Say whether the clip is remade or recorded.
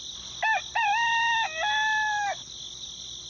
recorded